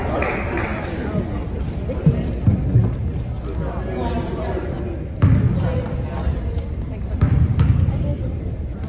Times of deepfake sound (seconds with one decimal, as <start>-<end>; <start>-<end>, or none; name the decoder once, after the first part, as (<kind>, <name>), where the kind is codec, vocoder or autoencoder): 0.7-2.6 (vocoder, BigVGAN v2); 8.1-8.9